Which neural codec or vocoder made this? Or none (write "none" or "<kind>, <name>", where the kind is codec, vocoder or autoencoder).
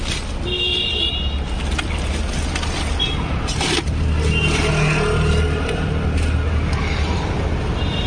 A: none